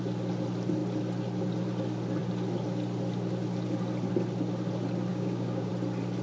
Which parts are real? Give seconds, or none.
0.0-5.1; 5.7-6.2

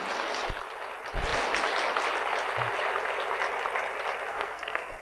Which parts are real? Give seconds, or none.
0.0-4.3

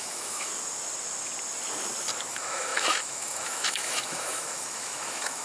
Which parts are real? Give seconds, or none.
0.5-2.3

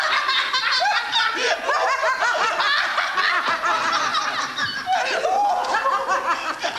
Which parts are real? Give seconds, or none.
0.0-6.8